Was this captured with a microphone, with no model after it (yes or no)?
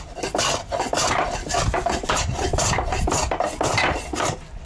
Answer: yes